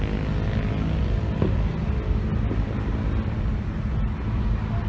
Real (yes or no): yes